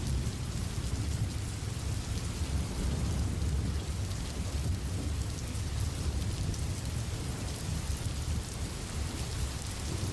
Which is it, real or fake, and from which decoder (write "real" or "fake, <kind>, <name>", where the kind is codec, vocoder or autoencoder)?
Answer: real